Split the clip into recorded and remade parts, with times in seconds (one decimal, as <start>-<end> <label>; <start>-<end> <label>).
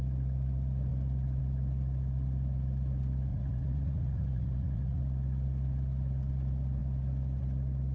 0.0-3.3 recorded; 3.3-5.0 remade; 5.0-7.9 recorded